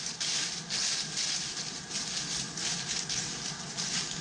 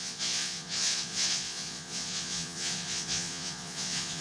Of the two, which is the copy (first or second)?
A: second